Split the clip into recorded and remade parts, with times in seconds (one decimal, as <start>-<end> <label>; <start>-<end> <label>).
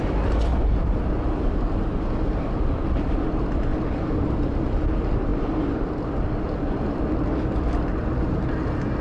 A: 0.0-0.5 recorded; 0.5-1.1 remade; 1.1-3.7 recorded; 3.7-4.4 remade; 4.4-9.0 recorded